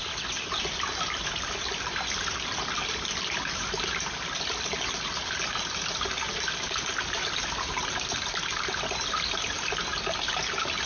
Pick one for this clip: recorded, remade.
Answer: recorded